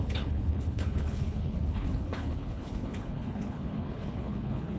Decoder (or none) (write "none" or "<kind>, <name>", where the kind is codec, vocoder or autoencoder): codec, HILCodec